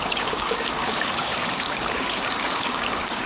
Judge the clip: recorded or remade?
remade